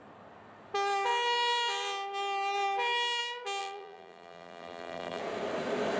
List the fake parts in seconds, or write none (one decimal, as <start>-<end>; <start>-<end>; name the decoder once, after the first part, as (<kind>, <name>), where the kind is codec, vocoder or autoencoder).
3.6-5.2 (vocoder, BigVGAN v2)